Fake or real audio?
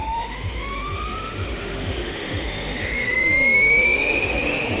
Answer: fake